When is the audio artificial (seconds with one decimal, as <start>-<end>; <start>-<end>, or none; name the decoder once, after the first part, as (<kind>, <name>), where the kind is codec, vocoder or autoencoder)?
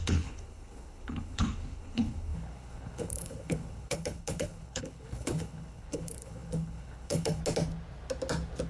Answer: 0.0-7.4 (codec, HILCodec)